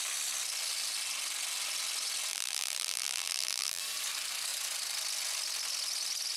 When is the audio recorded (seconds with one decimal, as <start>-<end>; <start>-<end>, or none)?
0.0-2.3; 3.8-6.4